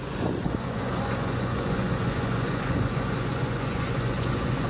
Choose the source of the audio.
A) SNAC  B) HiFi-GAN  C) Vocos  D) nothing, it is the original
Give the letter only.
C